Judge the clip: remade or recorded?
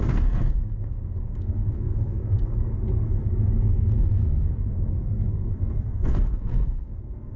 remade